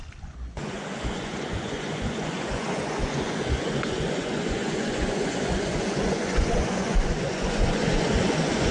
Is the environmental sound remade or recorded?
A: remade